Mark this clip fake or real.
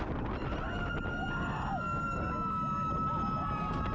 real